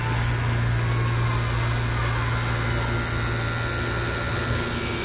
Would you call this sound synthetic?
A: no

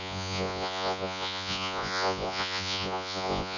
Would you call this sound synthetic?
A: yes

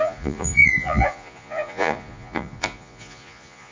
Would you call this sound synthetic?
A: yes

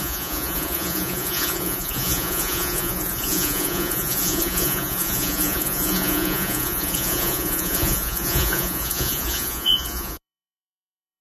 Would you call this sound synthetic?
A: yes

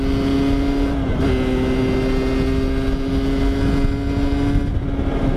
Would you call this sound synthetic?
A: no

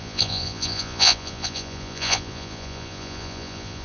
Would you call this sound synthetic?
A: yes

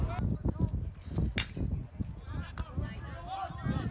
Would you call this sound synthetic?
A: no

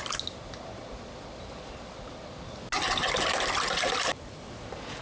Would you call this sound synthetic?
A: no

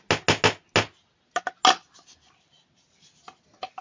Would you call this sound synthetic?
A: no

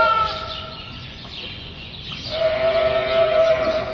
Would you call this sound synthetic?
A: yes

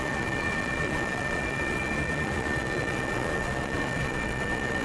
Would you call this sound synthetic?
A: yes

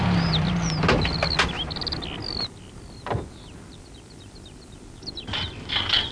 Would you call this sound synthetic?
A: no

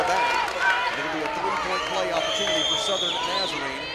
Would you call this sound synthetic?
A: no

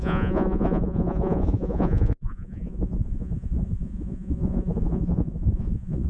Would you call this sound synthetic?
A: yes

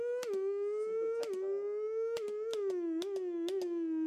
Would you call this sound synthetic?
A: no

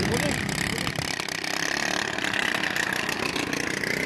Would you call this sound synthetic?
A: no